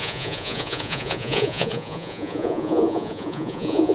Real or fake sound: fake